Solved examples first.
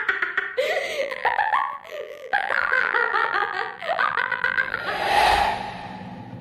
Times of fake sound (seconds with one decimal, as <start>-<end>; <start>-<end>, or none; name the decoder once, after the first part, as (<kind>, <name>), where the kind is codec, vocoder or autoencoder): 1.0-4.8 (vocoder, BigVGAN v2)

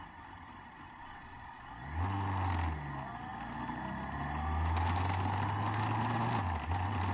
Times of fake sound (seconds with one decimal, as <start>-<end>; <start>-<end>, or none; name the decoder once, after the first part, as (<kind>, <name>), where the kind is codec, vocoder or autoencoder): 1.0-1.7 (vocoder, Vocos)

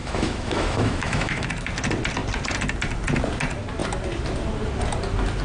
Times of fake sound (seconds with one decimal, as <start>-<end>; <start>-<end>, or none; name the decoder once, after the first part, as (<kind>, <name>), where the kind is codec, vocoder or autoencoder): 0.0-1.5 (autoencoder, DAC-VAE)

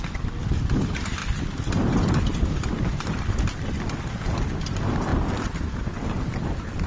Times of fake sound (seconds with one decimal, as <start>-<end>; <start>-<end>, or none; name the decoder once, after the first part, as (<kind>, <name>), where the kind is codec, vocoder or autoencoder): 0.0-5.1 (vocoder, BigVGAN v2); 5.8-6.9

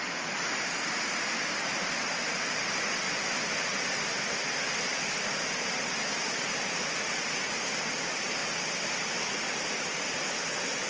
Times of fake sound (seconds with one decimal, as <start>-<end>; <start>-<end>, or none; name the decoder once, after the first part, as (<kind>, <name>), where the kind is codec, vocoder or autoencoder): 8.4-9.2 (vocoder, BigVGAN v2)